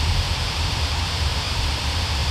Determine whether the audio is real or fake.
fake